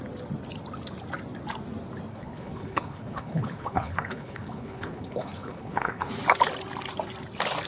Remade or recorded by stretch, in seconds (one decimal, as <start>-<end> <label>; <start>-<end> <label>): 0.0-2.1 recorded; 2.1-6.1 remade; 6.1-7.7 recorded